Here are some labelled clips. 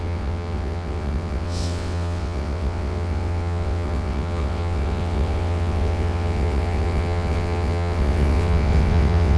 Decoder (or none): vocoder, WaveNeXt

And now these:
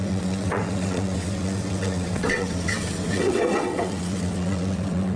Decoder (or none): vocoder, WaveNeXt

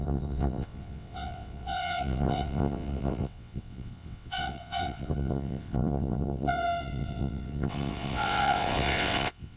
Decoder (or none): vocoder, WaveNeXt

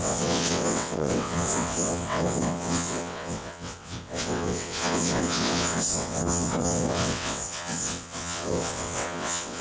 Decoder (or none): vocoder, WaveNeXt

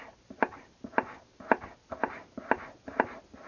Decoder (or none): none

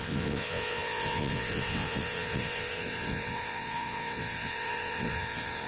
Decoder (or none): vocoder, WaveNeXt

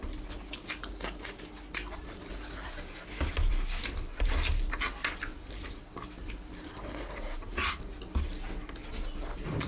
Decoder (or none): none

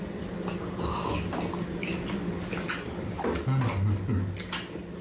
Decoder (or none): none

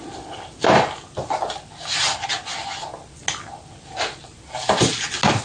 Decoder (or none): none